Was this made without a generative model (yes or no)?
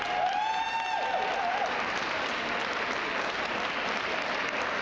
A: yes